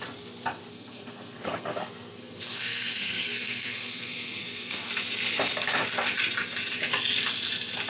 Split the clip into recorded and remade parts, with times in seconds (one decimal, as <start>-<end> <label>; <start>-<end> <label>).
0.0-0.7 recorded; 0.7-4.9 remade; 4.9-7.9 recorded